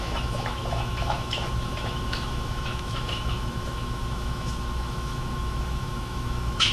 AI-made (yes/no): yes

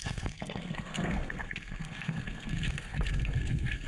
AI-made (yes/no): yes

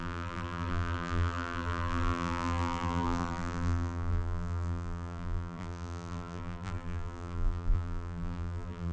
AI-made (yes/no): yes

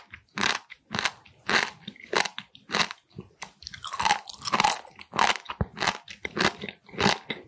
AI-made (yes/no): no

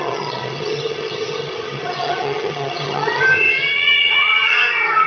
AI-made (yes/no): yes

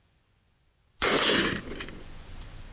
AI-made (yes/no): yes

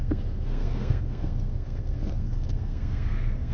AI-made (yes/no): yes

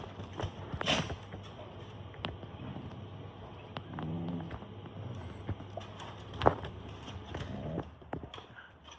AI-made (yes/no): no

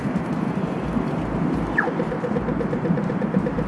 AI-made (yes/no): yes